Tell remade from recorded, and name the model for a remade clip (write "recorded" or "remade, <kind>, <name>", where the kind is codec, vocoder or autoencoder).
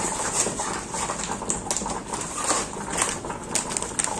recorded